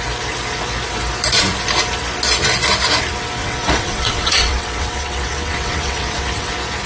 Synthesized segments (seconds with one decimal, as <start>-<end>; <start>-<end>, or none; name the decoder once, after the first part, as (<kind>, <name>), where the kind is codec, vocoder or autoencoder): 3.4-6.5 (vocoder, WaveNeXt)